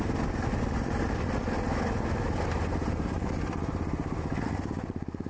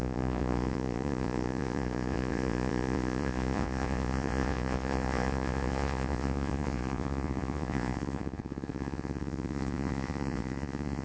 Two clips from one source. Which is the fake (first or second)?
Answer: second